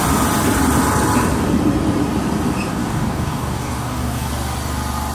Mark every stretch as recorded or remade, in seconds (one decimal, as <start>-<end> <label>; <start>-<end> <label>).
0.0-2.7 recorded; 2.7-4.3 remade; 4.3-5.1 recorded